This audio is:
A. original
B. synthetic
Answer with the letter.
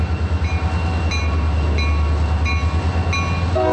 A